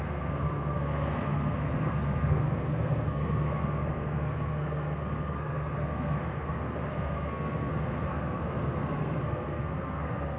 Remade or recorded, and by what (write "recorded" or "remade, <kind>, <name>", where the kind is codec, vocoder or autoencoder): remade, codec, SNAC